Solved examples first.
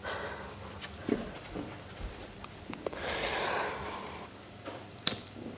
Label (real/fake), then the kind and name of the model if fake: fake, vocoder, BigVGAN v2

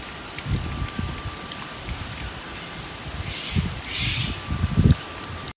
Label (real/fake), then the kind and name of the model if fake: fake, vocoder, BigVGAN v2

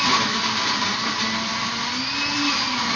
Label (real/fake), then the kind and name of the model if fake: real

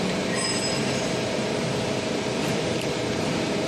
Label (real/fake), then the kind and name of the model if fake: fake, vocoder, BigVGAN v2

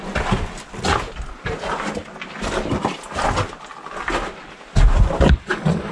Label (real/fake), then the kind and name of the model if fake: real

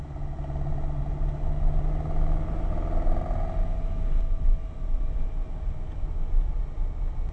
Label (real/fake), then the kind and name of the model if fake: real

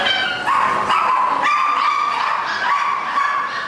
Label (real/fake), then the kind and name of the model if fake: real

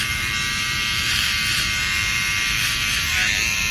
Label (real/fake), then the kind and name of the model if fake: fake, vocoder, BigVGAN v2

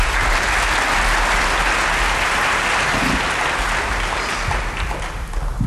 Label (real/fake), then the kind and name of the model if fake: real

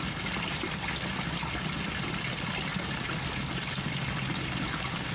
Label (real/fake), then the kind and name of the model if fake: real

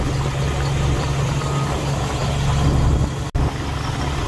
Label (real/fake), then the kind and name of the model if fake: real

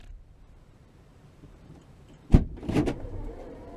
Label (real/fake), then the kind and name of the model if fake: fake, vocoder, BigVGAN v2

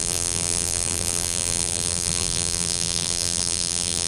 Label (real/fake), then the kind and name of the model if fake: fake, vocoder, BigVGAN v2